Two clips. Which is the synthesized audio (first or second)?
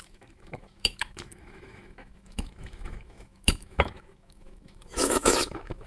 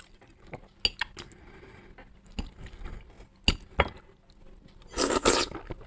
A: first